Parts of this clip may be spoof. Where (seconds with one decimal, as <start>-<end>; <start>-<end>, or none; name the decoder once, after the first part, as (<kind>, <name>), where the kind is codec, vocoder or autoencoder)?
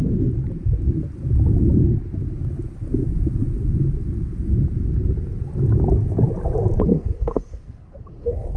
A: 6.9-8.6 (codec, SNAC)